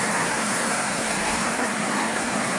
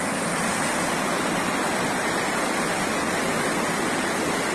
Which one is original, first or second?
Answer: second